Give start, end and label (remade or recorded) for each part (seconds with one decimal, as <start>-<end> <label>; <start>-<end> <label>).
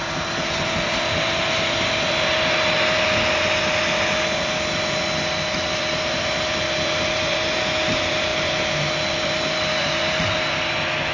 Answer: 0.0-11.1 recorded